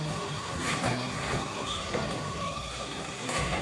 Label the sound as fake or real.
fake